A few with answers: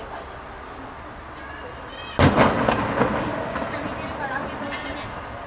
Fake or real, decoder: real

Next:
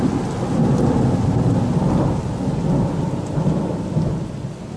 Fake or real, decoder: real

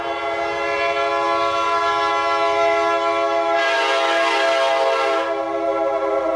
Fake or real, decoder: real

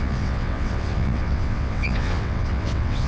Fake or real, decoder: fake, vocoder, WaveNeXt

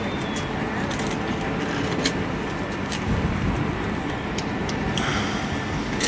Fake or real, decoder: real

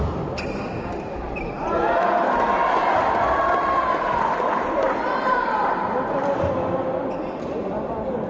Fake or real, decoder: real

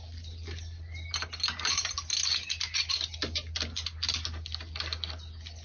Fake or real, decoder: real